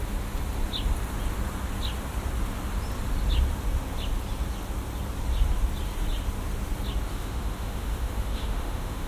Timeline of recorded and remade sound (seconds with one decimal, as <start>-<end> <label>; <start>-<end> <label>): 0.0-7.1 recorded; 7.1-9.1 remade